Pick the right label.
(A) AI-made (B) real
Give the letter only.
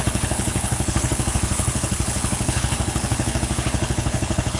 A